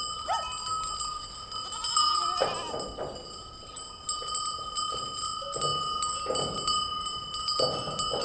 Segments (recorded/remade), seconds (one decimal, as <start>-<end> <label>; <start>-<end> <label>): 0.0-8.2 recorded